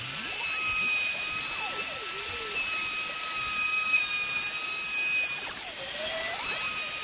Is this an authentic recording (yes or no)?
yes